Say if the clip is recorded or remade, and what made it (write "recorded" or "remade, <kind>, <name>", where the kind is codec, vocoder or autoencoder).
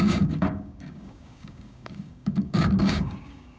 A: remade, codec, DAC